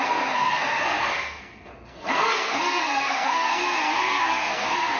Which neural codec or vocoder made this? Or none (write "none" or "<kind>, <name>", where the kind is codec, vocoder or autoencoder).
codec, SNAC